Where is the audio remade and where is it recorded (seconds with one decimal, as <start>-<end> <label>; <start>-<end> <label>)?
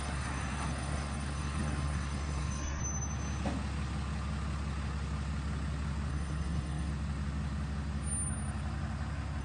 0.0-2.8 remade; 2.8-6.1 recorded; 6.1-6.9 remade; 6.9-9.4 recorded